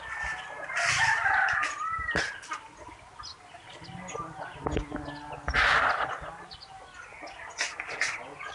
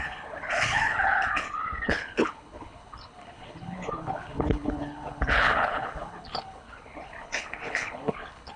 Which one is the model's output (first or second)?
second